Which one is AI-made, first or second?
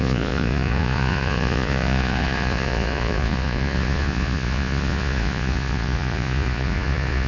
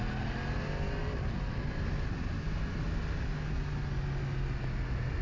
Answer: first